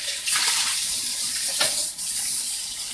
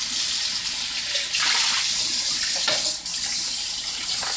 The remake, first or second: first